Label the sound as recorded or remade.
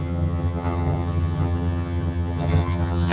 remade